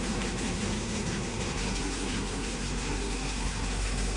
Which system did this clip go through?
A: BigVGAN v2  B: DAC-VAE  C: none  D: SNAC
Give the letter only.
D